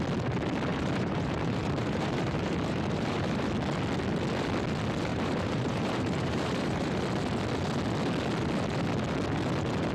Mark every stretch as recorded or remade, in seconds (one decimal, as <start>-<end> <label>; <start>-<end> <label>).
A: 0.0-0.7 recorded; 0.7-3.5 remade; 3.5-5.1 recorded; 5.1-7.0 remade; 7.0-9.9 recorded